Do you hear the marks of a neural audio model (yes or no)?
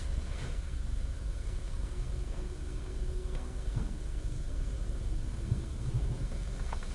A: yes